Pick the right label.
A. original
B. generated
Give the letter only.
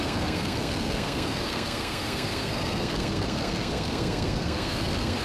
B